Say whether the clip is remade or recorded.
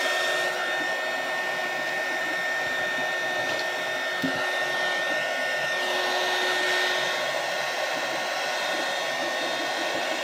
recorded